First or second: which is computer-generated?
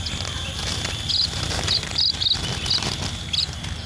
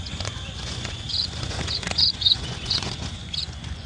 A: second